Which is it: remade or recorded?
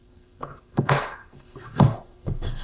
remade